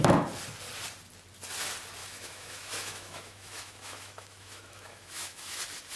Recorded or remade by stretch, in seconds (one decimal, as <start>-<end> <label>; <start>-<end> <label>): 0.0-2.0 recorded; 2.0-5.6 remade; 5.6-6.0 recorded